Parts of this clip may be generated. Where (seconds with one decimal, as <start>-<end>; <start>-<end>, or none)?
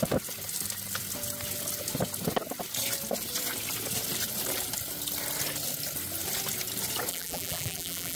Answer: 7.1-8.2